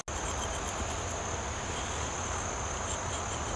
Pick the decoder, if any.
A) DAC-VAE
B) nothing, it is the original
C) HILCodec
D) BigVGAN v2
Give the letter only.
B